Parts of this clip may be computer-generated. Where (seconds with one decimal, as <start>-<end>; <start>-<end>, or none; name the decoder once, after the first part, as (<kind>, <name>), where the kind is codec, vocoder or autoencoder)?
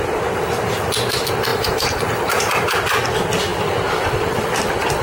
1.5-2.8 (vocoder, BigVGAN v2)